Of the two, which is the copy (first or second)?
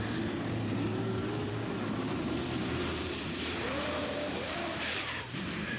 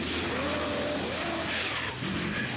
first